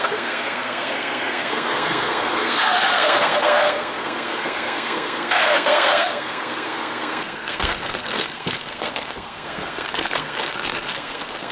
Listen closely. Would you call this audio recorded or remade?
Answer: remade